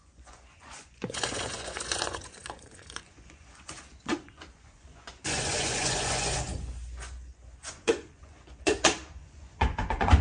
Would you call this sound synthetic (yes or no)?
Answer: yes